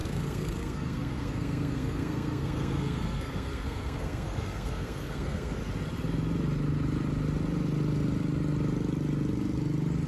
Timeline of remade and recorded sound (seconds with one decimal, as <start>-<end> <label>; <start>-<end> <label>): 0.0-5.6 remade; 5.6-10.1 recorded